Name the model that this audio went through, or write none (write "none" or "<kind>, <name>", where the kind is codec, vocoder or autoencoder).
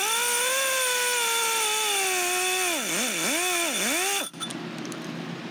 none